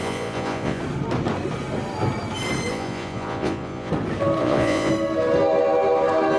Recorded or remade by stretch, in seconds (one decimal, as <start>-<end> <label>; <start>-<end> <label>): 0.0-0.8 remade; 0.8-2.7 recorded; 2.7-3.9 remade; 3.9-4.4 recorded; 4.4-4.9 remade; 4.9-6.4 recorded